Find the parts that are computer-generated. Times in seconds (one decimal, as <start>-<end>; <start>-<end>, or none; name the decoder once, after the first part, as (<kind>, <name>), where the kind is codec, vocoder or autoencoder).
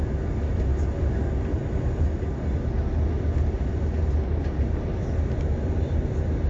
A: 0.7-1.2 (vocoder, BigVGAN v2)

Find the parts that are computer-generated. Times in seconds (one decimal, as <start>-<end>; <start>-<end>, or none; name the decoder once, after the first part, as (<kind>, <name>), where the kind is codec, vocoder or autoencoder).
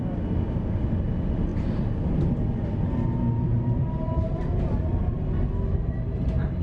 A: none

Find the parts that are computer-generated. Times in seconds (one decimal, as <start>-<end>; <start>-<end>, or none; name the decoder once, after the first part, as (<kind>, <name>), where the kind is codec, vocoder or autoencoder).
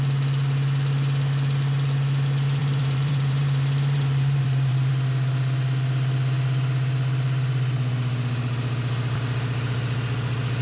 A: 2.6-4.9 (vocoder, BigVGAN v2)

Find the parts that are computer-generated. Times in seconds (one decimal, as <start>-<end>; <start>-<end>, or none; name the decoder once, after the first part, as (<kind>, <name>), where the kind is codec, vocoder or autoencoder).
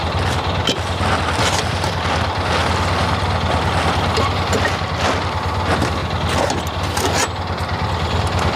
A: none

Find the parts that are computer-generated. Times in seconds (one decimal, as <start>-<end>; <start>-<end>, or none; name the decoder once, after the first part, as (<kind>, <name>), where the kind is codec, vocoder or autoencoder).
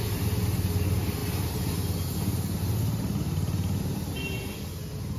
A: none